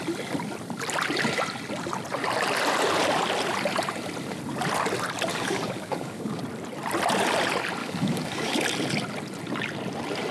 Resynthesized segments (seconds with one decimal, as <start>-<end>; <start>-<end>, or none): 5.3-6.4; 7.8-8.6